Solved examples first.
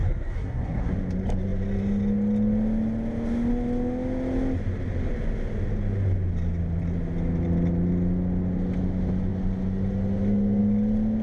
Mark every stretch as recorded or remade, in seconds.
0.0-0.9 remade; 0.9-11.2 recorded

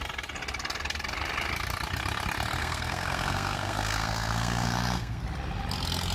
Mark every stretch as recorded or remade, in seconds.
0.0-2.6 recorded; 2.6-5.2 remade; 5.2-6.1 recorded

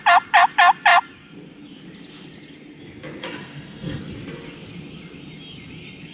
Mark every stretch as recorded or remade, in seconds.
0.0-3.2 recorded; 3.2-4.0 remade; 4.0-6.1 recorded

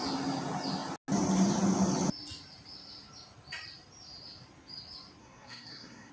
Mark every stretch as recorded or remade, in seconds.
0.0-5.2 recorded; 5.2-6.1 remade

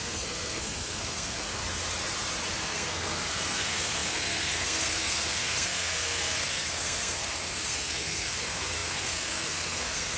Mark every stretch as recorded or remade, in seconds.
0.0-1.6 remade; 1.6-2.6 recorded; 2.6-10.2 remade